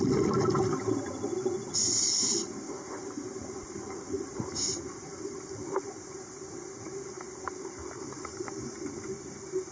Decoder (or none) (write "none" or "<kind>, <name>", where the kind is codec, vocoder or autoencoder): none